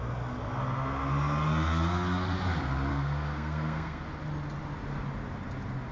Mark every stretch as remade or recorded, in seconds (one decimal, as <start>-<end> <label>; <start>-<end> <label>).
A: 0.0-2.9 recorded; 2.9-4.0 remade; 4.0-5.9 recorded